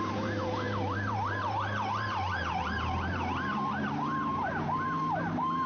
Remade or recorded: remade